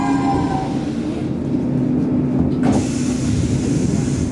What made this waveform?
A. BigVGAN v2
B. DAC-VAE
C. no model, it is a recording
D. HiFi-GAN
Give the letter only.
C